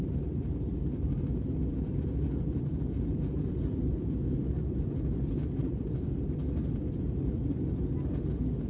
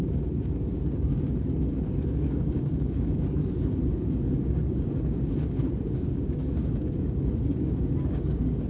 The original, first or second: first